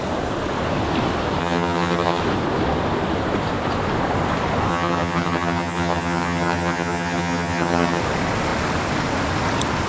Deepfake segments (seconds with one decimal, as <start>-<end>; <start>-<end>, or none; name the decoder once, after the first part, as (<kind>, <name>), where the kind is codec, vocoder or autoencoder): 1.4-2.2 (vocoder, HiFi-GAN); 4.7-8.0

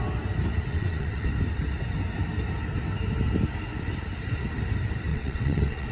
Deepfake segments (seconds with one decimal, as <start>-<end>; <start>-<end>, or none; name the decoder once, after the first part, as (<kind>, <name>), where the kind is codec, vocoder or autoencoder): 0.7-1.3 (vocoder, WaveNeXt); 5.1-5.9

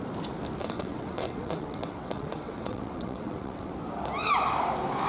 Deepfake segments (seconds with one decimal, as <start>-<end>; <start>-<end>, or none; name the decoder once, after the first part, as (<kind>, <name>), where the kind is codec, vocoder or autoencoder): 0.6-3.7 (vocoder, WaveNeXt)

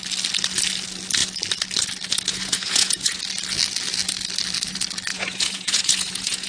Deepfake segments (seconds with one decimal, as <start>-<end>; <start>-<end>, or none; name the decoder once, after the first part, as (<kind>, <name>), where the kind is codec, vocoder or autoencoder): 2.3-3.2 (vocoder, Vocos); 5.1-6.5

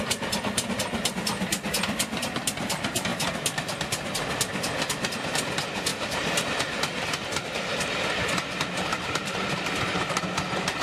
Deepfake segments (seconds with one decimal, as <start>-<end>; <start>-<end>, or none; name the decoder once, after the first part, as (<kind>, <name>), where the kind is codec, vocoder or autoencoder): 3.1-3.9 (vocoder, BigVGAN v2); 5.9-6.6; 8.9-10.2